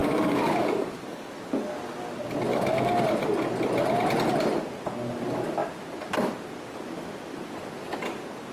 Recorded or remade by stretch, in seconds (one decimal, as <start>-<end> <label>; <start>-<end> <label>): 0.0-1.3 remade; 1.3-2.5 recorded; 2.5-3.0 remade; 3.0-8.5 recorded